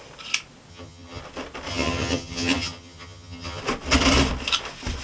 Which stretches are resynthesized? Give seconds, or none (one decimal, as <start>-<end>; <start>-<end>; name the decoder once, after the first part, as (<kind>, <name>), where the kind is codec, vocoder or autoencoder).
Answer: 0.7-1.2 (vocoder, HiFi-GAN); 1.7-3.6